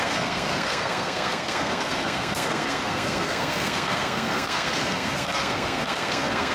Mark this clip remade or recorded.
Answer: remade